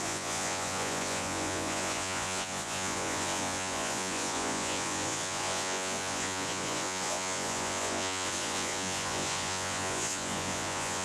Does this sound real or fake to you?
fake